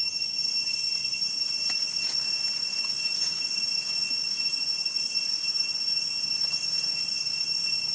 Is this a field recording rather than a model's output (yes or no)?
yes